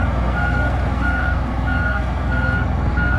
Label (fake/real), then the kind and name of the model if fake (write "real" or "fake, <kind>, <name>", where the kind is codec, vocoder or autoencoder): fake, codec, SNAC